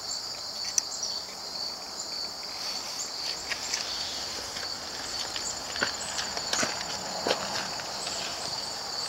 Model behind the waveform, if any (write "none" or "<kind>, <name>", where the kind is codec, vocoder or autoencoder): none